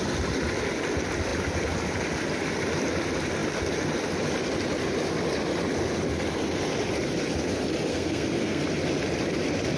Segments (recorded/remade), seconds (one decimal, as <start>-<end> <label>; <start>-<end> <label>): 0.0-7.9 recorded; 7.9-8.6 remade; 8.6-9.8 recorded